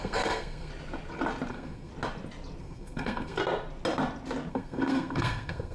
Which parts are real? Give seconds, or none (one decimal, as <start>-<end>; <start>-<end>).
0.7-1.5; 1.9-2.6; 3.4-4.5